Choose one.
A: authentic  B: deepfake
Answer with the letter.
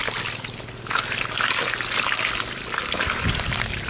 A